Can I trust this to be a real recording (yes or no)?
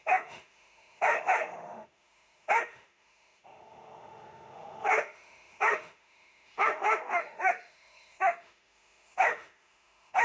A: no